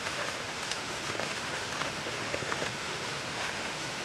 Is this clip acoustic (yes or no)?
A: no